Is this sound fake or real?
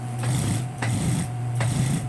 real